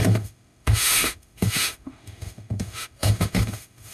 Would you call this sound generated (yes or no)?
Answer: yes